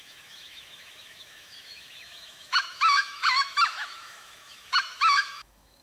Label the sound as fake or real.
fake